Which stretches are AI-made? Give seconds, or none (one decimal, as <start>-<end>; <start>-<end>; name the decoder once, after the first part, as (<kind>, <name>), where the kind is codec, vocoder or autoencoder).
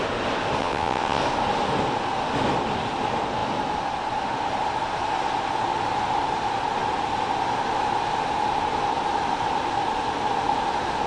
0.6-1.2 (vocoder, WaveNeXt)